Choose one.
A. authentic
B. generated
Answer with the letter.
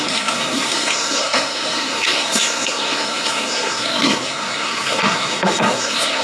B